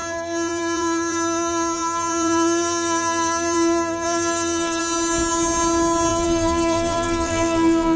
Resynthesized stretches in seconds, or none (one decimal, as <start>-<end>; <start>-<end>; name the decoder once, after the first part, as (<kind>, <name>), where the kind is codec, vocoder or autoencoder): 0.0-4.8 (vocoder, BigVGAN v2); 6.1-8.0